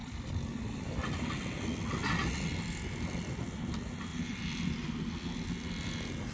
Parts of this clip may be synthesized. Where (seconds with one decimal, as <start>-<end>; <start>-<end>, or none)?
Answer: 0.0-1.6; 2.2-3.4; 4.1-4.9